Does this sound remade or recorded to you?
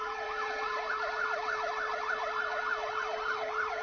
remade